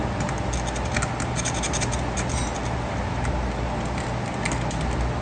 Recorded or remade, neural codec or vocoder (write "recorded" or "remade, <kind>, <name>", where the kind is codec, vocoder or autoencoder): recorded